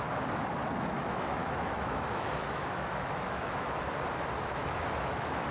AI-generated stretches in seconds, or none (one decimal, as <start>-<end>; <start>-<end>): 0.6-3.8; 4.6-5.5